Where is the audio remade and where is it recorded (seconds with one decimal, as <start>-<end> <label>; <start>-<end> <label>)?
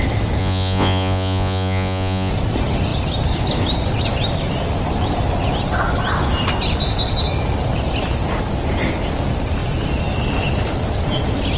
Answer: 0.0-0.4 recorded; 0.4-2.3 remade; 2.3-11.6 recorded